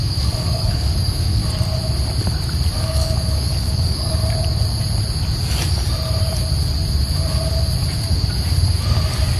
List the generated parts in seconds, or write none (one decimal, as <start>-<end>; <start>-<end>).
0.0-1.4; 2.7-4.2